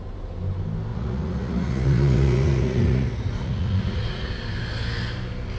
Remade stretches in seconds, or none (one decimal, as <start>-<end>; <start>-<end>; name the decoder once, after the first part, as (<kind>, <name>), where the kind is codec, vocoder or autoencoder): 0.9-4.3 (vocoder, Vocos)